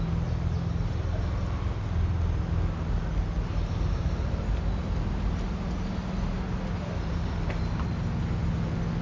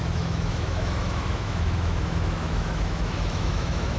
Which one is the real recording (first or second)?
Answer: first